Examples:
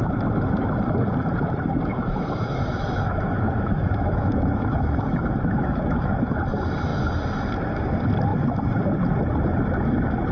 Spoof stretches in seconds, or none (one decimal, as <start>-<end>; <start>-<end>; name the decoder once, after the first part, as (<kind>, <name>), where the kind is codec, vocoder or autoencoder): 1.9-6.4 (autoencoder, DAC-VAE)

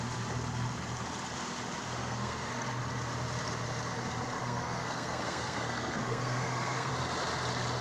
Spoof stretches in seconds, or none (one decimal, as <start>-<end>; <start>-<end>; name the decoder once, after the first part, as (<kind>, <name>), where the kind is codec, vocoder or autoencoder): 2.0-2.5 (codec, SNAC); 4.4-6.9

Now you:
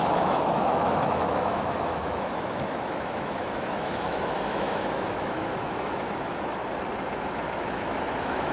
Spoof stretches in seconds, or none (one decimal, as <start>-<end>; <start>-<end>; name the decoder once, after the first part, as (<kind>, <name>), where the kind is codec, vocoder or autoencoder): 0.0-6.6 (autoencoder, DAC-VAE); 7.2-8.5

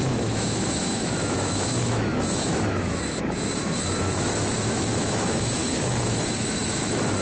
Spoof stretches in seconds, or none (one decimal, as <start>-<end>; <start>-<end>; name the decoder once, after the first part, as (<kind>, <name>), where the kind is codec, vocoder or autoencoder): 0.0-7.2 (autoencoder, DAC-VAE)

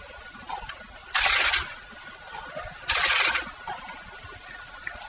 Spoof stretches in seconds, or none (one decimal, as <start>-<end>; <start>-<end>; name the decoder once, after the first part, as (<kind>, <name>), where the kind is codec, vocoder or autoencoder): 1.0-3.5 (vocoder, Vocos)

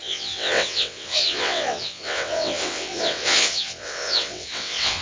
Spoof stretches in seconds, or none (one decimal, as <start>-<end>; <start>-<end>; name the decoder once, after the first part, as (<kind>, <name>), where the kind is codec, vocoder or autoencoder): 0.0-5.0 (vocoder, WaveNeXt)